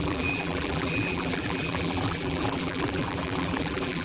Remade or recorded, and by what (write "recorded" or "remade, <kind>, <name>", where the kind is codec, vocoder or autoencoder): remade, vocoder, BigVGAN v2